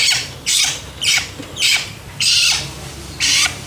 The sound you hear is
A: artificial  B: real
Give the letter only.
A